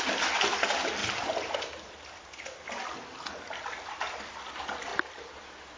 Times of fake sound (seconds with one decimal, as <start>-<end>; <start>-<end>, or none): none